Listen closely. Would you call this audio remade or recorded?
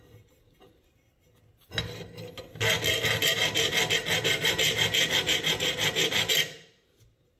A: recorded